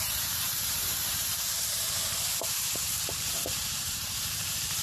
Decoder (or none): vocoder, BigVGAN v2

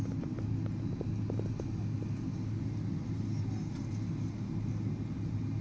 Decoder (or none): none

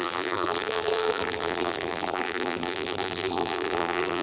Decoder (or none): vocoder, BigVGAN v2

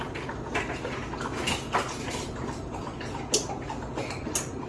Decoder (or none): none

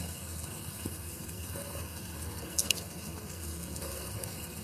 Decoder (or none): codec, SNAC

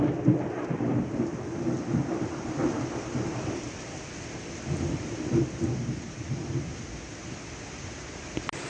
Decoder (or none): none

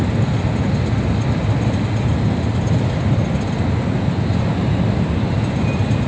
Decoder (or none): none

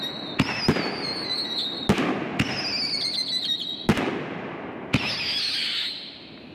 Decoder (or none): none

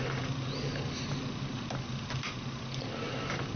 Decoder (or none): none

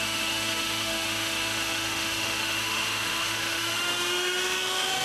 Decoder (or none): autoencoder, DAC-VAE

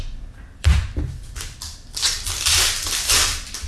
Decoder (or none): vocoder, BigVGAN v2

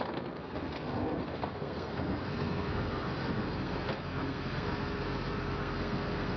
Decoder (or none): codec, SNAC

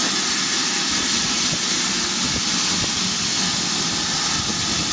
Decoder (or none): none